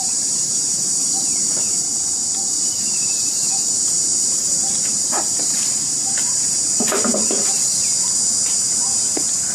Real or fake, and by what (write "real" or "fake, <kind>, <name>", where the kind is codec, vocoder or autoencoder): fake, vocoder, BigVGAN v2